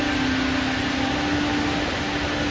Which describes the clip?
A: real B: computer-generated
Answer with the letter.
A